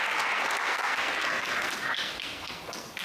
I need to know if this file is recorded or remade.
remade